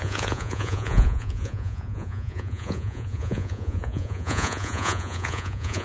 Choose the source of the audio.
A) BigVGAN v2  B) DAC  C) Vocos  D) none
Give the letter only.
C